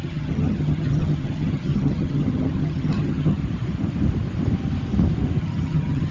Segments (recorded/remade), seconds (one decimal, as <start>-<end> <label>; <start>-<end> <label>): 0.0-3.4 remade; 3.4-5.4 recorded; 5.4-6.1 remade